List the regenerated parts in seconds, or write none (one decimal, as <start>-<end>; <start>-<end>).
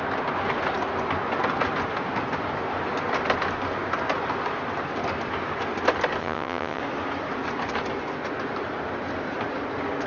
6.2-6.8